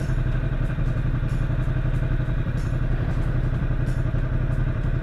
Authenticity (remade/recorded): remade